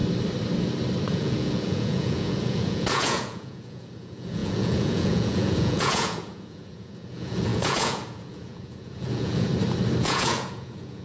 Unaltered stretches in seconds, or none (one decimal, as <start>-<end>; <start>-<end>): 0.0-1.1; 9.5-10.0